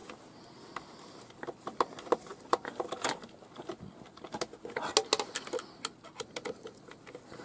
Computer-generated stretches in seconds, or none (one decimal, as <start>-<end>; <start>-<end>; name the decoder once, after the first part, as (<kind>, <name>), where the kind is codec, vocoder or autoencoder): none